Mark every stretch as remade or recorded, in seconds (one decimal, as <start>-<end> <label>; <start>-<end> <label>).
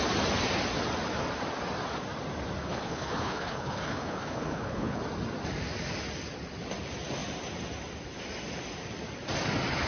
0.0-2.6 recorded; 2.6-5.0 remade; 5.0-9.9 recorded